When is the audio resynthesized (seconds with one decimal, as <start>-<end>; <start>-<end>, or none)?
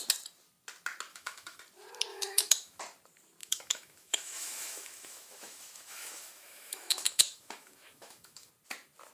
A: 1.1-1.6; 2.1-2.8; 3.4-8.5